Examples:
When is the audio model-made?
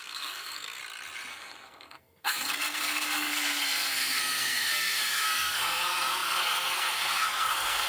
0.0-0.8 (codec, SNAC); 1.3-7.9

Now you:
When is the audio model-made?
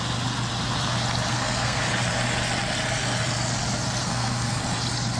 1.3-1.8 (codec, SNAC); 4.0-4.6